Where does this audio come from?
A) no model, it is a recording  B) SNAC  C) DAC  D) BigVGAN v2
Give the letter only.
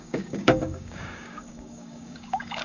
C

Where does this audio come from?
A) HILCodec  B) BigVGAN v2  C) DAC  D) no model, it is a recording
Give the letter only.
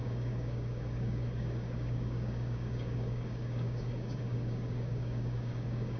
C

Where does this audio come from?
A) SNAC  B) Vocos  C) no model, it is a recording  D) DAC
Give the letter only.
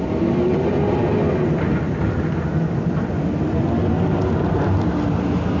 C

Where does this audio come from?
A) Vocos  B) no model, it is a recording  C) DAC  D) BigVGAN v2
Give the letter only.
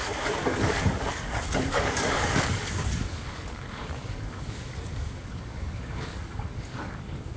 C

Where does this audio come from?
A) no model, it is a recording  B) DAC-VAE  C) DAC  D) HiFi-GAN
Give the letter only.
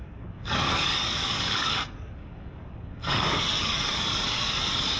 C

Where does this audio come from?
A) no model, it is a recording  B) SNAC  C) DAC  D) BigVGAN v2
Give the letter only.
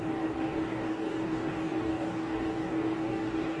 C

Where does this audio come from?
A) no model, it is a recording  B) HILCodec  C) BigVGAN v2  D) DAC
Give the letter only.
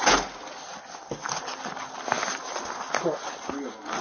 A